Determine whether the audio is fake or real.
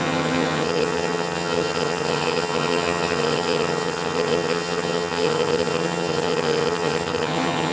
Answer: fake